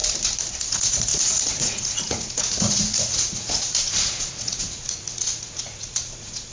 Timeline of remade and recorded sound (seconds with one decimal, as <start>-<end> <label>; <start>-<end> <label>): 0.0-0.7 recorded; 0.7-6.5 remade